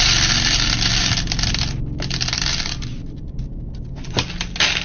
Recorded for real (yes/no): yes